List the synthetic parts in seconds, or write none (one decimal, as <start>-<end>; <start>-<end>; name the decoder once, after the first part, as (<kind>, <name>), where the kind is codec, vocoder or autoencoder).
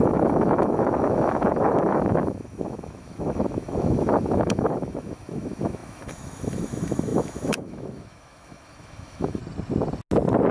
0.0-9.4 (autoencoder, DAC-VAE)